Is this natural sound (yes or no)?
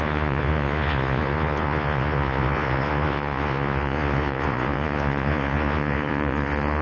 no